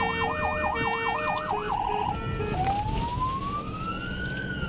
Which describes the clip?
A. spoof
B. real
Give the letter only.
B